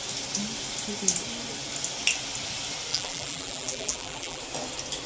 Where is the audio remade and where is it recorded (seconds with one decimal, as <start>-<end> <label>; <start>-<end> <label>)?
0.0-2.9 recorded; 2.9-4.4 remade; 4.4-5.1 recorded